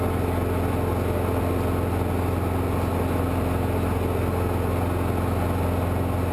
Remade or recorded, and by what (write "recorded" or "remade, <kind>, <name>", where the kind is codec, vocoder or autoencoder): recorded